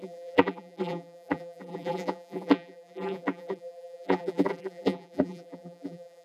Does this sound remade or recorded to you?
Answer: remade